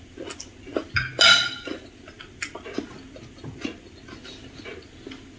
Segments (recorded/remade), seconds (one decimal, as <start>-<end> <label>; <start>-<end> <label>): 0.0-5.4 recorded